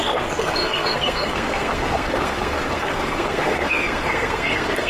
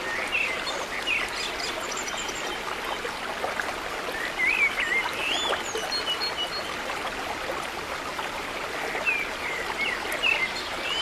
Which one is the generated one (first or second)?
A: first